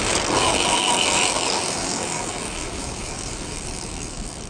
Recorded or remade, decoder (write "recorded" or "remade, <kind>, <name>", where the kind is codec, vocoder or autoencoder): remade, codec, DAC